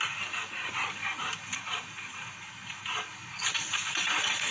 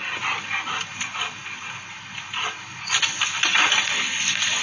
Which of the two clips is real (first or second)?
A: second